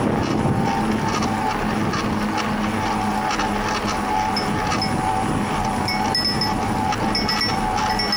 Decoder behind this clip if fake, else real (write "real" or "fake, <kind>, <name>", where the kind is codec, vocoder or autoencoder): real